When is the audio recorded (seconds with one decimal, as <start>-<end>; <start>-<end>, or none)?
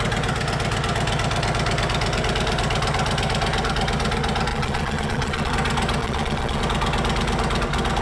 0.0-4.5; 5.5-6.0; 6.6-8.0